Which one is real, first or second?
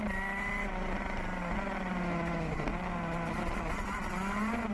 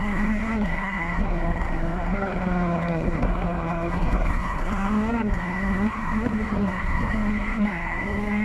first